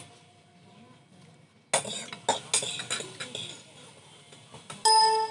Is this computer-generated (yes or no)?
no